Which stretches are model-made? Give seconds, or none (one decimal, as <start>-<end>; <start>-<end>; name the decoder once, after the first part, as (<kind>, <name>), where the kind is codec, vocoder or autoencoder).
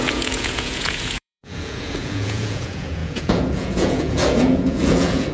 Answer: 0.0-5.3 (vocoder, Vocos)